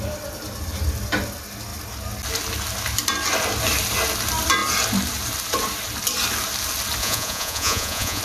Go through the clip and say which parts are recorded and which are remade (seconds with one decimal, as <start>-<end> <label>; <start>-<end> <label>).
0.0-7.0 recorded; 7.0-8.2 remade